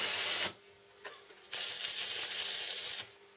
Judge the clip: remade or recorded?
recorded